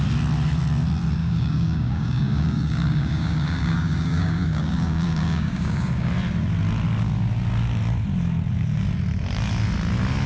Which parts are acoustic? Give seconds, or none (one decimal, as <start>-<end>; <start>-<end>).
0.0-1.2; 6.1-10.3

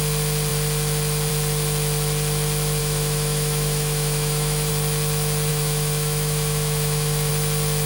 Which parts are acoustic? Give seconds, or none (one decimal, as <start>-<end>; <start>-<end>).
0.0-2.8; 4.7-5.5; 7.3-7.9